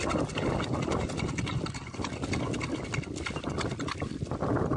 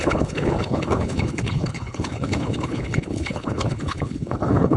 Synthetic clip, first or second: second